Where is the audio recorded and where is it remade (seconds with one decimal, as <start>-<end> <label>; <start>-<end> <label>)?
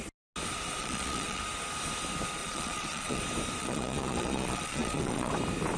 0.0-0.8 recorded; 0.8-1.4 remade; 1.4-2.4 recorded; 2.4-3.2 remade; 3.2-3.6 recorded; 3.6-5.3 remade; 5.3-5.8 recorded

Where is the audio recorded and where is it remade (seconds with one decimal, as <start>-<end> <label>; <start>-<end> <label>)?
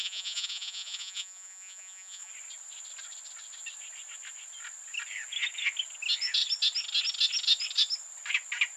0.0-2.3 remade; 2.3-8.8 recorded